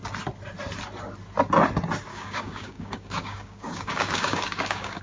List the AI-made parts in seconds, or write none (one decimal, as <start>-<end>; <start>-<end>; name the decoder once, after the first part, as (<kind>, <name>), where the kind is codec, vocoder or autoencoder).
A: 2.1-5.0 (codec, DAC)